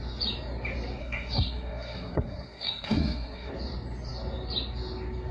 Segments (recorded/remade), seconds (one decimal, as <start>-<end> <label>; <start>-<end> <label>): 0.0-1.0 recorded; 1.0-3.5 remade; 3.5-5.3 recorded